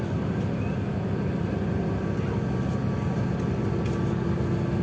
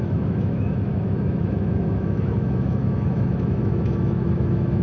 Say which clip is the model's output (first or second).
second